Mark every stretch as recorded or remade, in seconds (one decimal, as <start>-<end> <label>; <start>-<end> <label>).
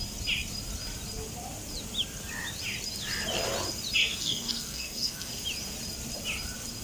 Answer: 0.0-4.0 recorded; 4.0-5.3 remade; 5.3-6.8 recorded